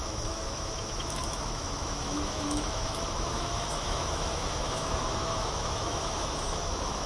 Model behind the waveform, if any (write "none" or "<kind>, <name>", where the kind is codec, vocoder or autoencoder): autoencoder, DAC-VAE